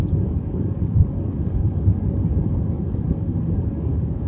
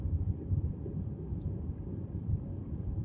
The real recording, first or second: second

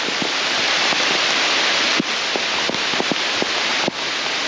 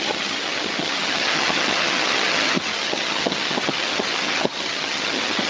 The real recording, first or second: first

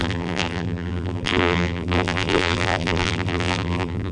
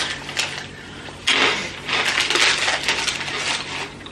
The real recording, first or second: second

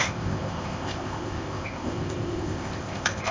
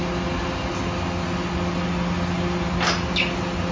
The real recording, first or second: second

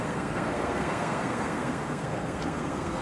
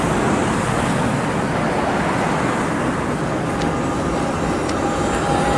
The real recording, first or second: second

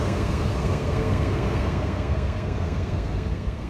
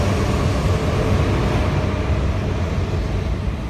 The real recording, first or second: second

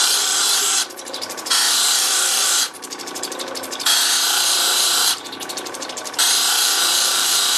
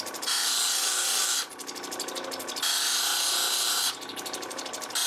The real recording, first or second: second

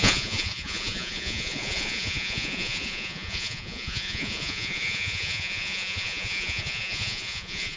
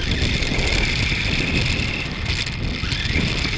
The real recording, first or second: second